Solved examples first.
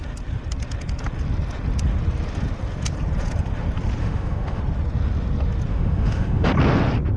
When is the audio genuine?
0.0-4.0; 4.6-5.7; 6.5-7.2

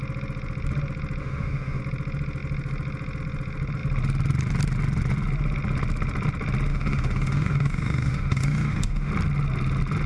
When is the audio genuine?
0.0-1.2; 1.8-6.7; 9.1-10.1

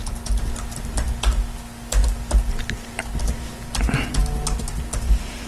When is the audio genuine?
0.0-5.5

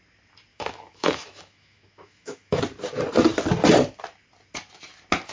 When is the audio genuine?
0.0-0.5; 2.6-5.3

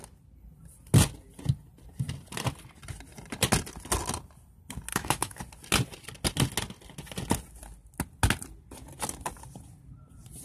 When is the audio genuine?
0.0-4.9; 5.4-10.4

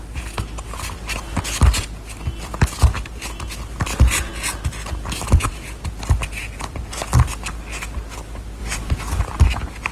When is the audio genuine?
0.0-9.9

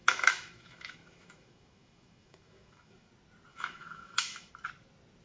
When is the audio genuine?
3.1-3.5; 4.5-5.2